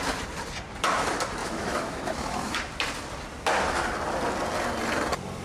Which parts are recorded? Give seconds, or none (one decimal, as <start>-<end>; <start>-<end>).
0.0-1.4; 2.6-5.4